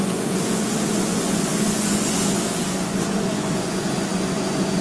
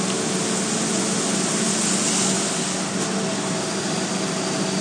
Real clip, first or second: second